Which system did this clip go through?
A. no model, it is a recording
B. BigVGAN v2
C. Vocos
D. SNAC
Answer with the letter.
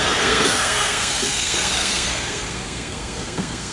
D